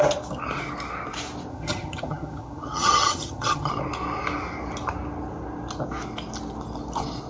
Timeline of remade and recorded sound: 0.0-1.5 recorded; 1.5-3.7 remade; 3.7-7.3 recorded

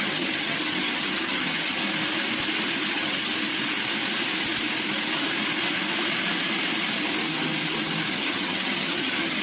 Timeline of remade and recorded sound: 0.0-1.8 remade; 1.8-2.9 recorded; 2.9-3.3 remade; 3.3-8.1 recorded; 8.1-9.4 remade

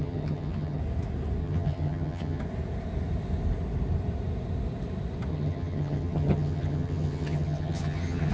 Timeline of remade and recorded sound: 0.0-0.8 remade; 0.8-1.4 recorded; 1.4-2.4 remade; 2.4-5.3 recorded; 5.3-8.3 remade

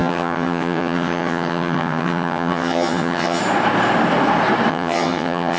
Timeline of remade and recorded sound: 0.0-3.4 remade; 3.4-4.7 recorded; 4.7-5.6 remade

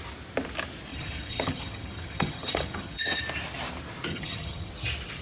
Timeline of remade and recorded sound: 0.0-0.9 recorded; 0.9-3.2 remade; 3.2-4.1 recorded; 4.1-4.7 remade; 4.7-5.2 recorded

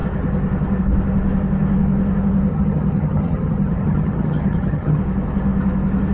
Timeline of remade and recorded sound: 0.0-2.5 recorded; 2.5-5.0 remade; 5.0-6.1 recorded